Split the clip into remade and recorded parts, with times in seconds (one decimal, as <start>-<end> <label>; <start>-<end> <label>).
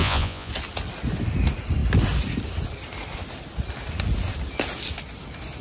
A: 0.0-0.5 remade; 0.5-5.6 recorded